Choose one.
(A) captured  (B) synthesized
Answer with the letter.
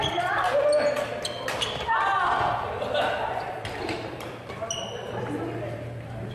A